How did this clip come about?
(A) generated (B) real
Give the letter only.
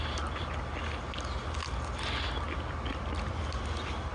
B